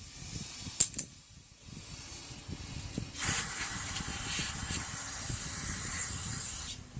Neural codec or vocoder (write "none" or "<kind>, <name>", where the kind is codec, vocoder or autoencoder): none